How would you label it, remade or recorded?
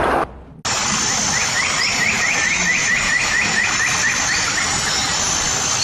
recorded